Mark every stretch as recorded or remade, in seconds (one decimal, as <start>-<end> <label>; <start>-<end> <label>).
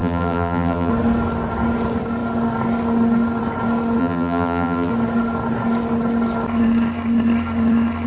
0.0-0.9 remade; 0.9-4.0 recorded; 4.0-4.9 remade; 4.9-8.1 recorded